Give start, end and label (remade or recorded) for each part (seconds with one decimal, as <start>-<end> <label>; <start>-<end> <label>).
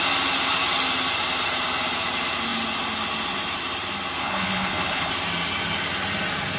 0.0-4.2 recorded; 4.2-5.1 remade; 5.1-6.6 recorded